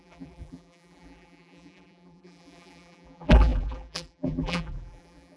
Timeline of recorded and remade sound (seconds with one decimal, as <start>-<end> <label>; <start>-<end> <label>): 0.0-5.4 remade